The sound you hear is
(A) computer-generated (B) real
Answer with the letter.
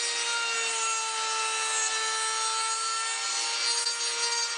B